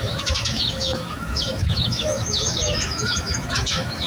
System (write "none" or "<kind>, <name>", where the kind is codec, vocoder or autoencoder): autoencoder, DAC-VAE